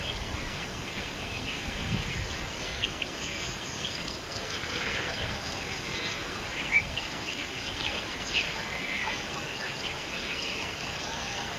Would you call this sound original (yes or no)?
no